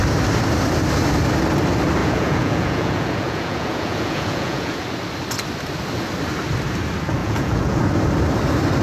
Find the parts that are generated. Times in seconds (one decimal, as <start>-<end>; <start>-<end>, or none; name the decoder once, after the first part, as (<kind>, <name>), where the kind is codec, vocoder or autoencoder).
2.0-4.8 (vocoder, Vocos); 7.2-7.8